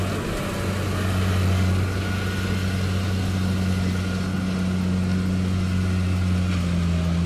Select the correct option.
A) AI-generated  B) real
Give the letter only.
B